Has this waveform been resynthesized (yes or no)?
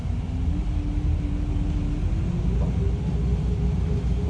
no